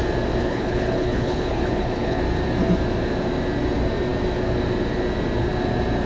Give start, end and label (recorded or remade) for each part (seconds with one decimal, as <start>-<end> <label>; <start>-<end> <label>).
0.0-0.4 recorded; 0.4-2.2 remade; 2.2-6.1 recorded